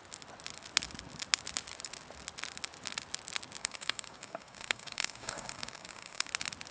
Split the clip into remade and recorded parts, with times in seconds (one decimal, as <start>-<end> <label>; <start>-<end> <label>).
0.0-3.6 recorded; 3.6-6.3 remade; 6.3-6.7 recorded